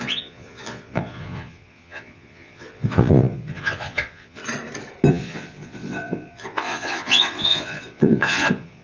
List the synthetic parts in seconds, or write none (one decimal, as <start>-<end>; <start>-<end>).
0.0-4.4; 5.1-8.8